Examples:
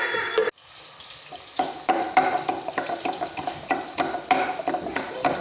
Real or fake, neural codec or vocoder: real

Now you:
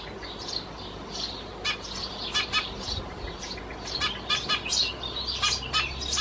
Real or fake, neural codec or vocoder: real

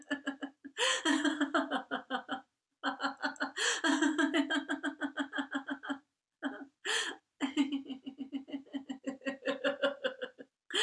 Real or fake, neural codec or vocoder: real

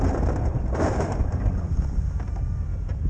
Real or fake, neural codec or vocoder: fake, vocoder, BigVGAN v2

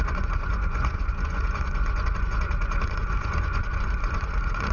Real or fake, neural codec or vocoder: fake, vocoder, Vocos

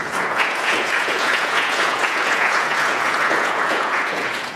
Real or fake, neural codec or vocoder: fake, vocoder, Vocos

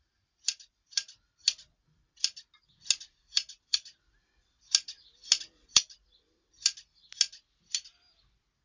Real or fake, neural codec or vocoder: real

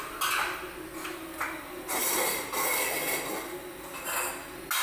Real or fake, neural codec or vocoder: real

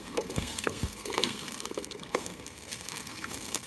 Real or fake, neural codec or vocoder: fake, codec, SNAC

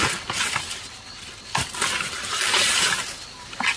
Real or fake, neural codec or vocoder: real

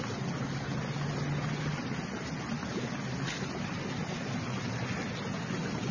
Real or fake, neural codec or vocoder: real